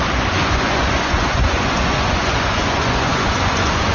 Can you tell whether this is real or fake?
fake